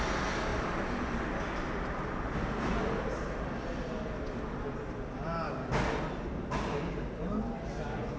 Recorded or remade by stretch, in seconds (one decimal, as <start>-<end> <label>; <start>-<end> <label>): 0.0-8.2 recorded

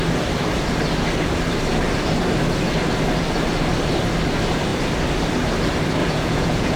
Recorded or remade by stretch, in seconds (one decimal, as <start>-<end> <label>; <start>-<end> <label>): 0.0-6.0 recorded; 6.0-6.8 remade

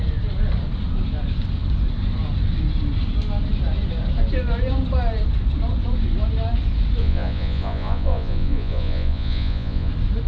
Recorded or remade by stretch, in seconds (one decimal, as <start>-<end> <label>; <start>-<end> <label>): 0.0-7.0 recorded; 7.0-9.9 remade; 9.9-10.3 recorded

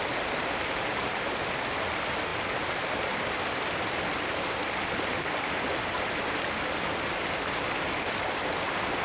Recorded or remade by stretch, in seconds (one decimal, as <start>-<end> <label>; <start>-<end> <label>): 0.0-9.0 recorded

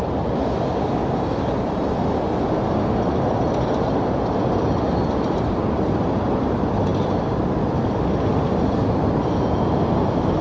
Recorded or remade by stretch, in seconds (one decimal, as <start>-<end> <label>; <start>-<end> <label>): 0.0-10.4 recorded

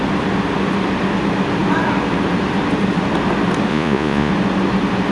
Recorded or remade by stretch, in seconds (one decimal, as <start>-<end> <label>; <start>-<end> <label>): 0.0-3.7 recorded; 3.7-4.3 remade; 4.3-5.1 recorded